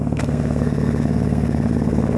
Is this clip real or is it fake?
fake